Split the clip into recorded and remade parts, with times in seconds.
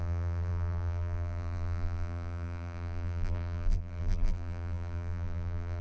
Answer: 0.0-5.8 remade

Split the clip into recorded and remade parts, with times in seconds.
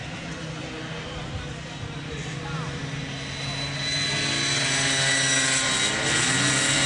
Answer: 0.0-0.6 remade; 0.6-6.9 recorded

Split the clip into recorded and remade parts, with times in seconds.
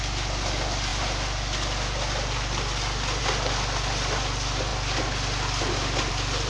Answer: 0.0-6.5 recorded